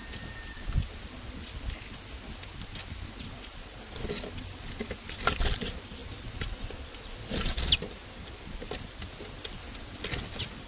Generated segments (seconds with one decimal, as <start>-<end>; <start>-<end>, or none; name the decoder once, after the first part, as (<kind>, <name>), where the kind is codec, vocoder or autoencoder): none